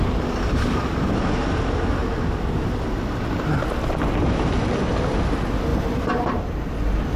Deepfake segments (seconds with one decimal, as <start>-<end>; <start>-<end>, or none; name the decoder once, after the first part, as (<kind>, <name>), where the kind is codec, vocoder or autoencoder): 2.0-2.6 (vocoder, BigVGAN v2); 5.7-6.6